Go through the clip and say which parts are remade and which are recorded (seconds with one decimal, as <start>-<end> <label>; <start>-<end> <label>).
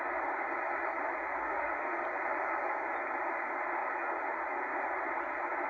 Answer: 0.0-1.4 recorded; 1.4-2.0 remade; 2.0-5.7 recorded